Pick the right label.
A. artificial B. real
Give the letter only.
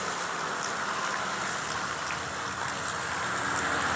B